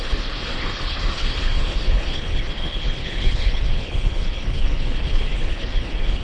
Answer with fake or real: fake